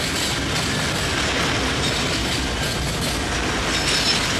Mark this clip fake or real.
real